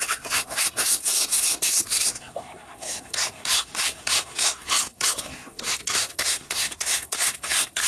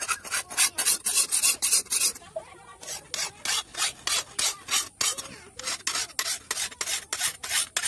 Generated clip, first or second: first